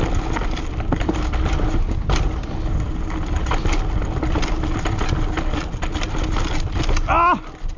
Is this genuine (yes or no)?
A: yes